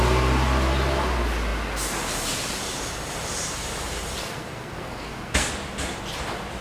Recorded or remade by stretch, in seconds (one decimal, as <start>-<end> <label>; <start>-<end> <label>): 0.0-4.2 recorded; 4.2-5.5 remade; 5.5-6.6 recorded